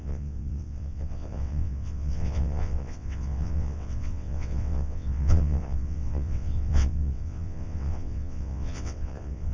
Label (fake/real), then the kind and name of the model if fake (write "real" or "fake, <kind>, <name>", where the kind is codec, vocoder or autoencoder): fake, vocoder, WaveNeXt